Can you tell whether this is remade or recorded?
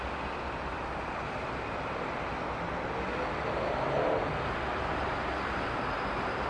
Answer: recorded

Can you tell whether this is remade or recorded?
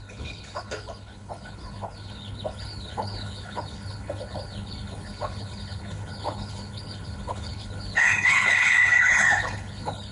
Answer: remade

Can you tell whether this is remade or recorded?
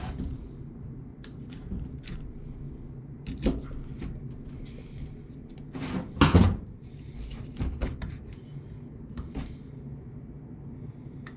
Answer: recorded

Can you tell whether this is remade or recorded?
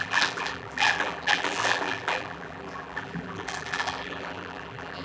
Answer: remade